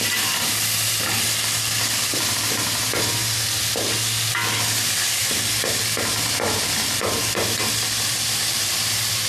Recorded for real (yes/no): no